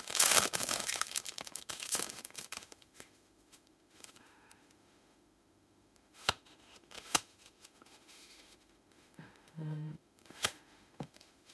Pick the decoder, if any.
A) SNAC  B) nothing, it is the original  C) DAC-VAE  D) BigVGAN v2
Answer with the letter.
C